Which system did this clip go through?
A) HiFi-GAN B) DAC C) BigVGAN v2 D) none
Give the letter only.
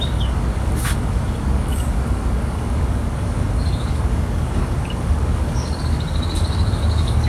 B